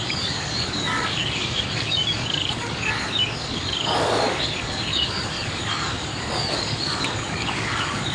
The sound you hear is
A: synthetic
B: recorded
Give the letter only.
A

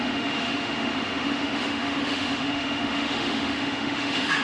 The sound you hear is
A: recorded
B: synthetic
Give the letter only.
B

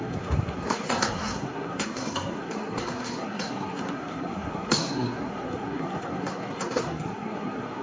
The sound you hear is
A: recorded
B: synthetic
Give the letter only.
B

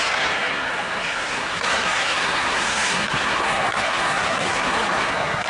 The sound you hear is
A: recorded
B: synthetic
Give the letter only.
B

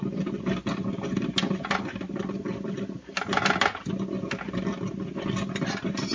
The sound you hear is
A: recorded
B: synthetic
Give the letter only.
A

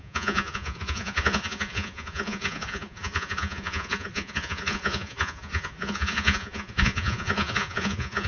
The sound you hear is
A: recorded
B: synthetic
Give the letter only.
B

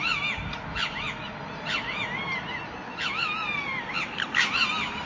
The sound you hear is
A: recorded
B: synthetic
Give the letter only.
A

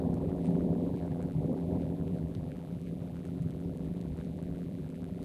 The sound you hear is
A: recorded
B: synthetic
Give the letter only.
B